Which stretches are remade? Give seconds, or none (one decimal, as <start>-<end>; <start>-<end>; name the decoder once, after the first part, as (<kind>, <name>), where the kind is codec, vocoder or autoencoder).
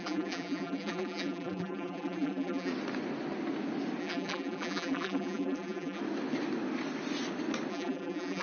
0.0-2.7 (vocoder, BigVGAN v2); 4.0-6.0; 7.7-8.4